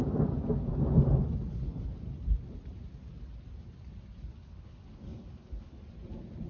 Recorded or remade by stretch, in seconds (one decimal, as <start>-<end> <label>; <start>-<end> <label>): 0.0-1.5 recorded; 1.5-2.0 remade; 2.0-4.3 recorded; 4.3-5.7 remade; 5.7-6.5 recorded